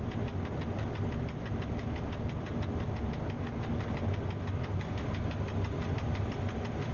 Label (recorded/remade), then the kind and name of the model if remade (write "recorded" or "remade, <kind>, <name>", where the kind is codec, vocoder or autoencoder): recorded